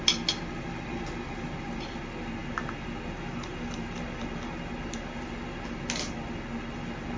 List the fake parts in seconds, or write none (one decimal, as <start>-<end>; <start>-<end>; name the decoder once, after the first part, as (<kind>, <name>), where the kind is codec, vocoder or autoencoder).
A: none

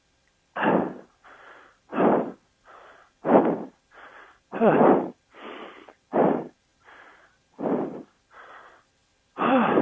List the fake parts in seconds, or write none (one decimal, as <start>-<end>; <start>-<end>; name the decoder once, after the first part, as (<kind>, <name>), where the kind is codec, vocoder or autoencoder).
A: 0.0-1.9 (vocoder, BigVGAN v2); 4.0-6.7; 8.4-9.8

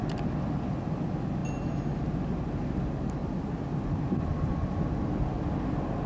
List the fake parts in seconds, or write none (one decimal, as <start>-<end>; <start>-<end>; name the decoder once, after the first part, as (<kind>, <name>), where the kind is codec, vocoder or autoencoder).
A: none

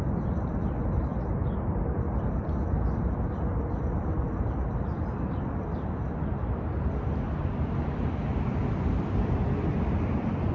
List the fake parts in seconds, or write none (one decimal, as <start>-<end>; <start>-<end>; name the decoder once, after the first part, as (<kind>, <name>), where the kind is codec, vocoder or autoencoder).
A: 0.0-6.4 (vocoder, BigVGAN v2); 7.6-10.5

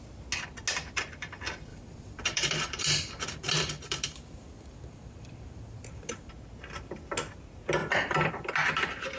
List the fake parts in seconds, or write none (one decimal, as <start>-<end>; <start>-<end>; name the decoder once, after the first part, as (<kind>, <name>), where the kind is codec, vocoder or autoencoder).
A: 1.7-6.3 (vocoder, BigVGAN v2); 7.8-8.3

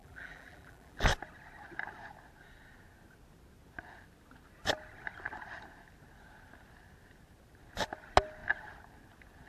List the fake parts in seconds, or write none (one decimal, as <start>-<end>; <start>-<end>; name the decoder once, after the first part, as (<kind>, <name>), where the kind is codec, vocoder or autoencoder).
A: 0.0-1.0 (vocoder, BigVGAN v2)

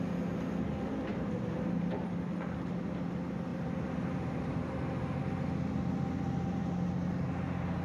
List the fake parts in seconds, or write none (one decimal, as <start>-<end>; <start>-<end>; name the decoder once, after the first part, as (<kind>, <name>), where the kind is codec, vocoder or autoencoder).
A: 1.1-2.1 (vocoder, BigVGAN v2); 3.5-5.2

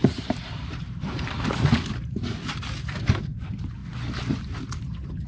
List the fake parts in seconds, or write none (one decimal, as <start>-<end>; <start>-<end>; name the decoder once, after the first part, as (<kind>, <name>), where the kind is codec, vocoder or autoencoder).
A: 0.0-3.8 (vocoder, BigVGAN v2); 4.4-5.3